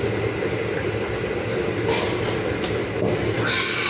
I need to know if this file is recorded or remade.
recorded